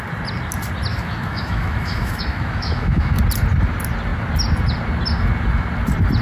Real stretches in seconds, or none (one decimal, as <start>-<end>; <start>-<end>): 0.0-0.9; 3.2-6.2